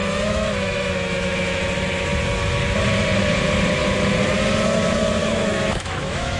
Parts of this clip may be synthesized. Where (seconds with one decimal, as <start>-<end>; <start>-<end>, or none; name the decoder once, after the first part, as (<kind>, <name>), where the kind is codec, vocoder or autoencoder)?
0.0-1.6 (autoencoder, DAC-VAE); 5.2-6.4